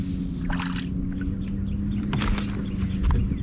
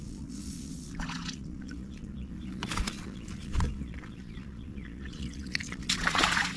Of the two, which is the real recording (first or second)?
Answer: first